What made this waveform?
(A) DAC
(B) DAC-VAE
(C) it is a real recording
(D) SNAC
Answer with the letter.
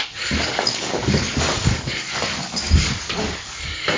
A